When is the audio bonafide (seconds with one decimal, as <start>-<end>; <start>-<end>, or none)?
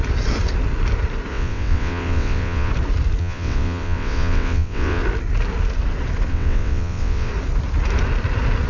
0.0-1.3; 2.7-3.2; 5.0-6.3; 7.3-8.7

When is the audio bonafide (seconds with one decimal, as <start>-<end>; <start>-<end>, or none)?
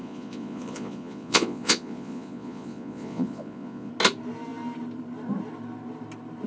3.9-6.5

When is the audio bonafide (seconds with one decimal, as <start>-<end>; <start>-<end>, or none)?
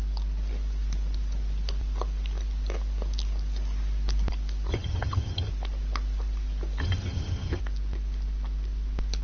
0.0-4.7; 5.5-6.8; 7.6-9.2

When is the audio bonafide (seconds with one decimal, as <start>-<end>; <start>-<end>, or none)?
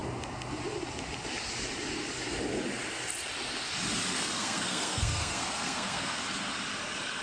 0.0-4.1; 6.2-7.2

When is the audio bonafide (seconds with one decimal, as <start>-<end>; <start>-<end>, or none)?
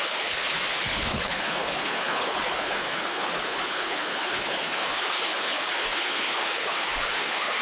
none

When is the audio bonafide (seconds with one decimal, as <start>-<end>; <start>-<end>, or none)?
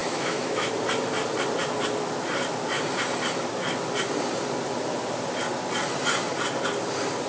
0.7-7.3